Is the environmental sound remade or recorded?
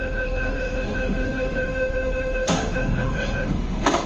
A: remade